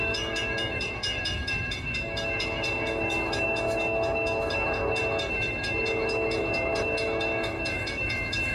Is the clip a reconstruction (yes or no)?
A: yes